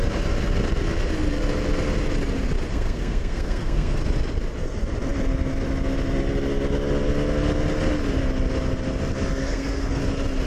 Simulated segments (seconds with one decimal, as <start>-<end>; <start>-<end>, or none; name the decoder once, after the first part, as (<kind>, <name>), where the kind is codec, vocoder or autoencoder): 2.7-4.0 (codec, SNAC); 9.4-10.0